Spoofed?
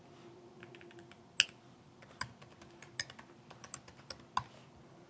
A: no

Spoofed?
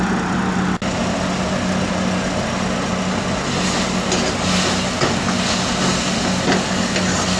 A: no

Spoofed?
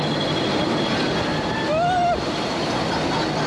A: no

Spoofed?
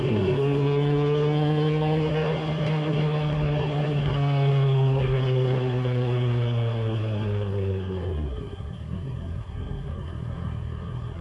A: yes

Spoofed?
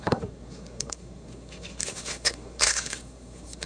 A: yes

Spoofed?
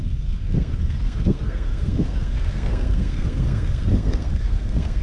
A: yes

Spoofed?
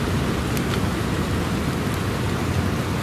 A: no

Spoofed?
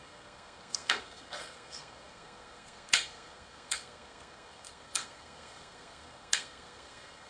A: yes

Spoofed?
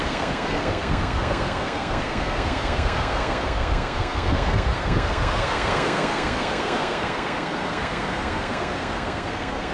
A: yes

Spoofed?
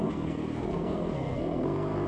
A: yes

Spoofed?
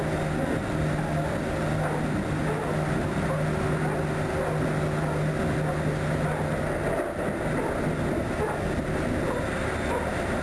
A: no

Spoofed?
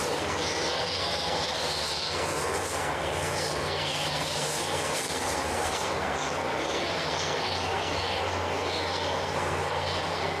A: yes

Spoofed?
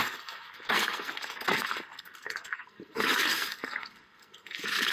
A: yes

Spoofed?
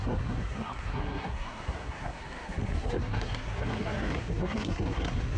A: yes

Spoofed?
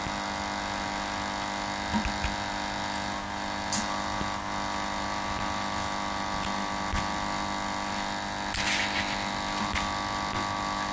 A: no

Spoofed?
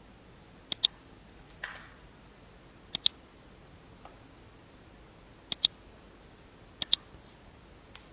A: no